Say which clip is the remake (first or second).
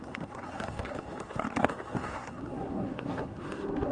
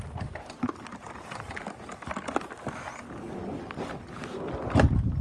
first